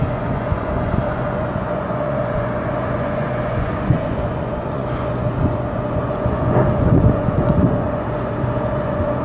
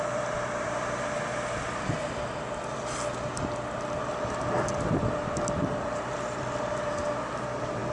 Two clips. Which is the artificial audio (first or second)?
first